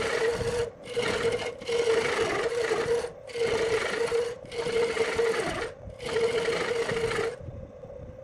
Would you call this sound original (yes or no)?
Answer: yes